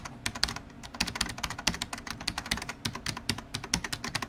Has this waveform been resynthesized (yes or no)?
no